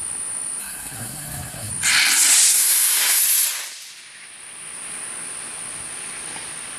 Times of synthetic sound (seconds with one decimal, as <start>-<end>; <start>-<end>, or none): 0.6-1.7; 2.5-3.2